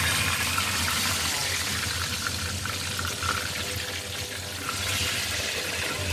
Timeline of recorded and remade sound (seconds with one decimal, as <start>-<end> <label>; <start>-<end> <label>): 0.0-6.1 recorded